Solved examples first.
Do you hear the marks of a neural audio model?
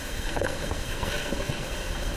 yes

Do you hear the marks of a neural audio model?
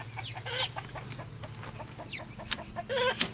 no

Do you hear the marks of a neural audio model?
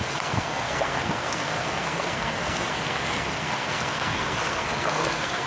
yes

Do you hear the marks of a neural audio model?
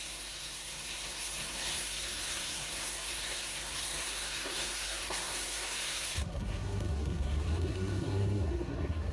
yes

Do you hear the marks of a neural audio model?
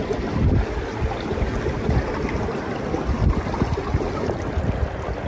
no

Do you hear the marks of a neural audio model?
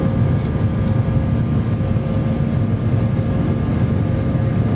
no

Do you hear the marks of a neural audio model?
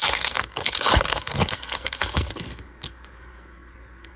yes